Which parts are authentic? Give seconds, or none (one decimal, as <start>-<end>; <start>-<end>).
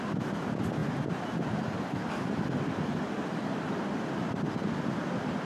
0.0-5.4